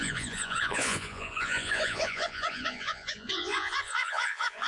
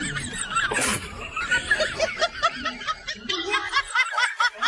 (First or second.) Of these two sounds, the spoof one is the first